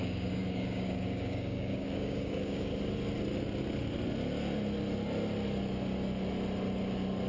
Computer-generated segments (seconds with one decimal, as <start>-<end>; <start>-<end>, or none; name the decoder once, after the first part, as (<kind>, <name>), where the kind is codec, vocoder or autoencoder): 0.0-2.7 (codec, DAC)